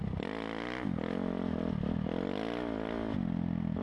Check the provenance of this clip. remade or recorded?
recorded